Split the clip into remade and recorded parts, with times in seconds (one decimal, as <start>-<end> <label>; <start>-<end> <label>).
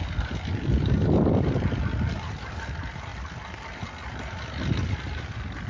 0.0-5.7 recorded